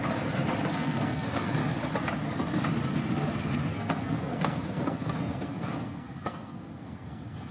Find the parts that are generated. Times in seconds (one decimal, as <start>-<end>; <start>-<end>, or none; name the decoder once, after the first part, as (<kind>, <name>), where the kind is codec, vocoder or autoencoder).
0.7-1.6 (codec, SNAC); 3.7-7.5